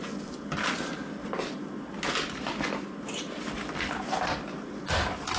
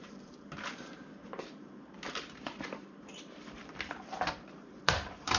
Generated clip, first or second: second